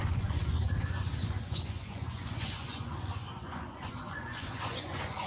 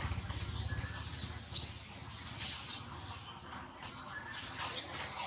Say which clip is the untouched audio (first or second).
second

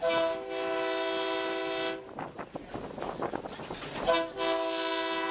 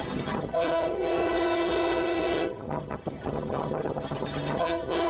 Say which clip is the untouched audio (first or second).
first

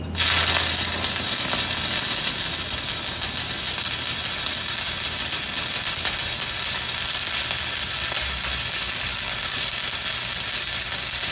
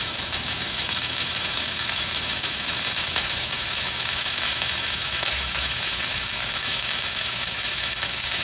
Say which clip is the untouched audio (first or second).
first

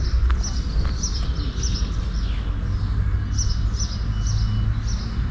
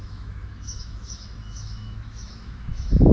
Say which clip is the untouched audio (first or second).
first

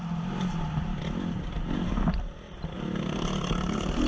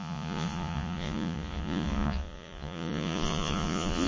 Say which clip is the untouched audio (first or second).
first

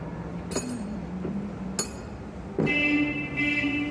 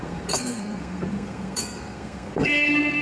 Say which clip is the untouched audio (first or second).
first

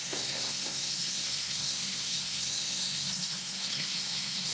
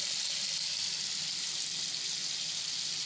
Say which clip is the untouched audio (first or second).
second